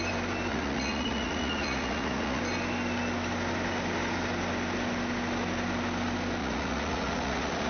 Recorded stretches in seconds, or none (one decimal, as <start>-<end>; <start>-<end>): 0.0-0.5; 2.4-6.4